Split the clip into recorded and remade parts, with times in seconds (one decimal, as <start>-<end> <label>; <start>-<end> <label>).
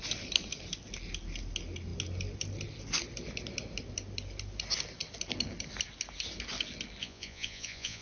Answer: 0.0-7.0 recorded; 7.0-8.0 remade